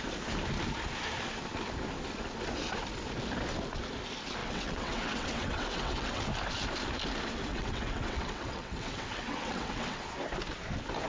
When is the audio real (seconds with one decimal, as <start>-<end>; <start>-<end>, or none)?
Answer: 0.0-4.4; 6.2-7.5; 10.0-11.1